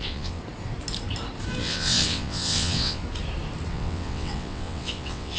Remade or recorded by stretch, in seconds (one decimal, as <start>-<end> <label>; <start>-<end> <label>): 0.0-0.4 remade; 0.4-1.6 recorded; 1.6-3.0 remade; 3.0-3.7 recorded; 3.7-5.4 remade